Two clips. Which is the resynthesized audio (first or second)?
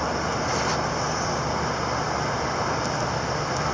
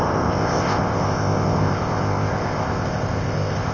second